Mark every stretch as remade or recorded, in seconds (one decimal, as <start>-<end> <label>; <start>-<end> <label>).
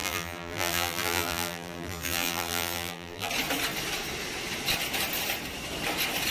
0.0-3.3 remade; 3.3-6.3 recorded